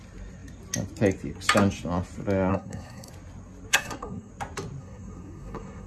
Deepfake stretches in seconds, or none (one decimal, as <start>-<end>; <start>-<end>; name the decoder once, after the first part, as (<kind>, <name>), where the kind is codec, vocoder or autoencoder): 2.5-3.1 (codec, SNAC); 3.7-4.3; 4.8-5.9